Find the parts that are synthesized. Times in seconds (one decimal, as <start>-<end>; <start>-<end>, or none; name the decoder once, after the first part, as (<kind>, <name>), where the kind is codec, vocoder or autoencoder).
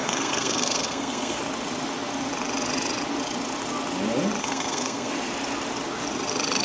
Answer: 0.0-1.4 (codec, SNAC); 4.4-5.1